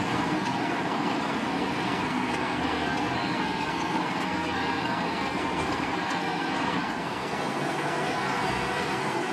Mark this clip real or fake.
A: fake